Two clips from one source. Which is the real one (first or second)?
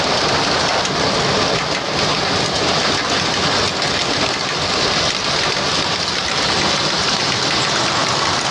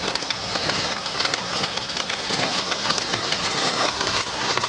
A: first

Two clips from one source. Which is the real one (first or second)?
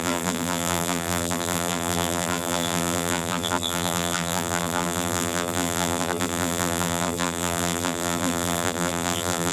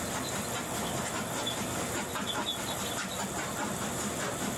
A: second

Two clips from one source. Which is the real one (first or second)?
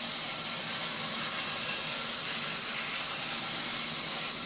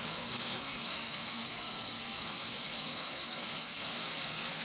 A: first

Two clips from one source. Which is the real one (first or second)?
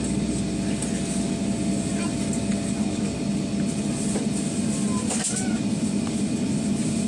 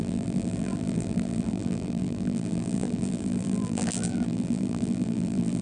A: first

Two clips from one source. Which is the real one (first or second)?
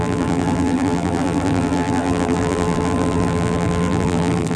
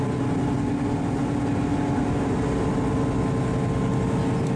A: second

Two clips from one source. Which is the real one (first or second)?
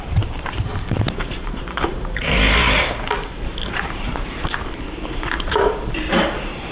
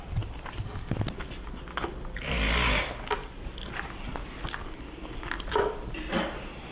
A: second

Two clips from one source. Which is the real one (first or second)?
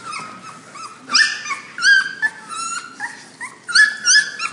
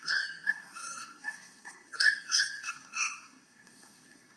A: first